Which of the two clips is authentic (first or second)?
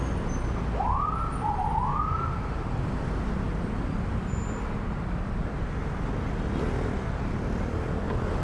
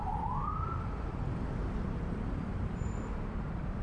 first